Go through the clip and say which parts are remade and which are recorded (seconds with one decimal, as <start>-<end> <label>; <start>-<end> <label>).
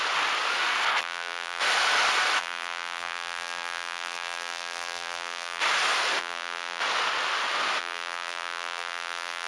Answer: 0.0-1.0 recorded; 1.0-1.6 remade; 1.6-2.4 recorded; 2.4-5.6 remade; 5.6-6.2 recorded; 6.2-6.8 remade; 6.8-7.8 recorded; 7.8-9.5 remade